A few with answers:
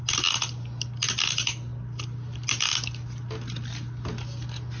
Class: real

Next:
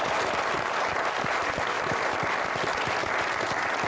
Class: real